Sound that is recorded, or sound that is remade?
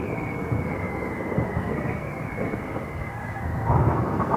remade